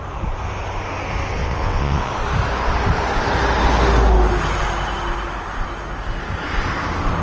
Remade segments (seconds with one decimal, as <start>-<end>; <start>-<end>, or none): 1.4-2.1